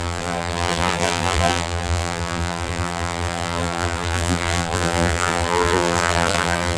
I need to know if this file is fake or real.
fake